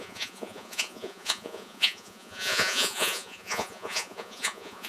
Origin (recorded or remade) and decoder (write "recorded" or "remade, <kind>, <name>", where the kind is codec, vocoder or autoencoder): remade, vocoder, Vocos